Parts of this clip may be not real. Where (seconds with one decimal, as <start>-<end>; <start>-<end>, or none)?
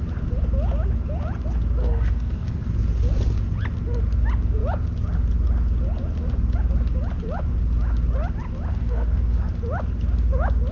1.8-2.7; 8.7-9.5